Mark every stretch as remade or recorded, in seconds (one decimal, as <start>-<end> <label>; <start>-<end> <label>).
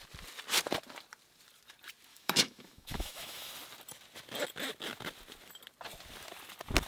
0.0-2.1 recorded; 2.1-3.5 remade; 3.5-6.9 recorded